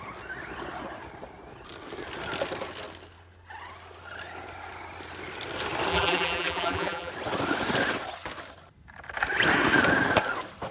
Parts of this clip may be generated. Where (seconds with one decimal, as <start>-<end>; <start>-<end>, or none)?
5.9-7.1